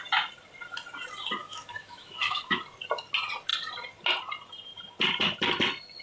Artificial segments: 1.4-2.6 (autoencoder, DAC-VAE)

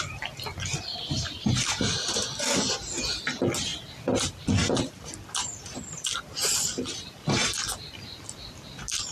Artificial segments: none

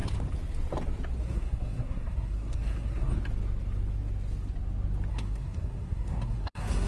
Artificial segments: 1.2-3.1 (codec, SNAC); 5.1-6.9

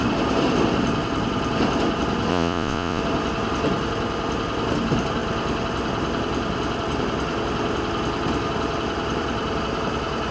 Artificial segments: 2.3-3.0 (vocoder, Vocos)